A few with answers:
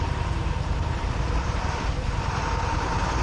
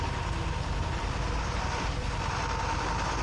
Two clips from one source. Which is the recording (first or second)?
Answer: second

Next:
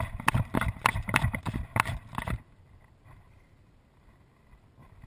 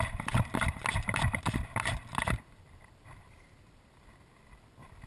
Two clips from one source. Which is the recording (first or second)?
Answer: first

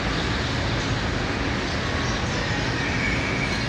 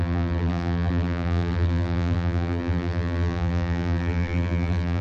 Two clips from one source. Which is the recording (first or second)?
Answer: first